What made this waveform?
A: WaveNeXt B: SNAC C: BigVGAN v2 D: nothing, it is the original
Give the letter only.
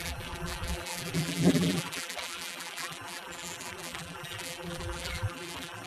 C